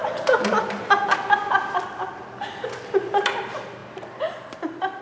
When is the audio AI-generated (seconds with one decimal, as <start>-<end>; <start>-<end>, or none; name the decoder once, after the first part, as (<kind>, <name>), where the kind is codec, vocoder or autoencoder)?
0.0-0.9 (vocoder, BigVGAN v2)

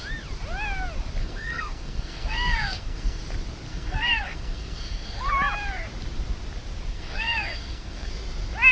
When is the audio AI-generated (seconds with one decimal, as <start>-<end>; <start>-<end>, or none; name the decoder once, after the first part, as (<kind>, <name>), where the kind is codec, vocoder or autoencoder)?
1.2-3.2 (codec, SNAC); 3.7-5.3; 6.9-8.1

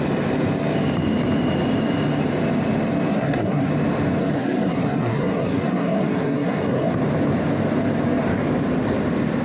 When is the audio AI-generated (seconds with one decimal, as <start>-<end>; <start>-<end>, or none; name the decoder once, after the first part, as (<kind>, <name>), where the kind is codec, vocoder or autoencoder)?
3.1-3.7 (codec, SNAC); 4.2-6.9

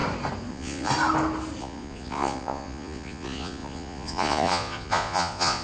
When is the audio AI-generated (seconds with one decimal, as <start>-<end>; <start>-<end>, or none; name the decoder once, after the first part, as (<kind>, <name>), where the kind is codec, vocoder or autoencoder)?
0.5-0.9 (vocoder, Vocos); 1.6-5.6

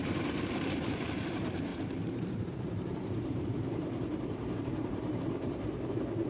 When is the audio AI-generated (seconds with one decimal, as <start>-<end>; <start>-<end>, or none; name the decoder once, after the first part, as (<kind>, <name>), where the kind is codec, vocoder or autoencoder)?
0.0-6.3 (vocoder, BigVGAN v2)

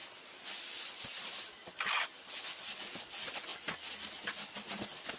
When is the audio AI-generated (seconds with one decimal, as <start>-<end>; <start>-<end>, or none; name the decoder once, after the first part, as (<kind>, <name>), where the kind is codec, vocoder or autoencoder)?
none

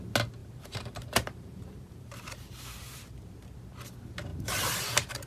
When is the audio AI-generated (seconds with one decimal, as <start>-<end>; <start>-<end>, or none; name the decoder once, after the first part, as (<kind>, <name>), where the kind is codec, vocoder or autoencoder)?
0.4-3.5 (vocoder, BigVGAN v2); 4.3-5.3

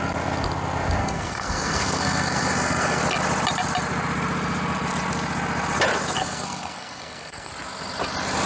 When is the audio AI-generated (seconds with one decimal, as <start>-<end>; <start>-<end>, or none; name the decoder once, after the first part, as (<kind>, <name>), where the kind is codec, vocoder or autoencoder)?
1.0-3.0 (codec, SNAC); 6.2-7.5